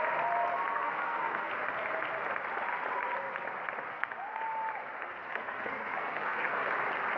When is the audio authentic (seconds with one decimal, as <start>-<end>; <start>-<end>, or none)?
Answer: 0.0-0.7; 1.5-3.9; 4.4-5.3; 6.7-7.2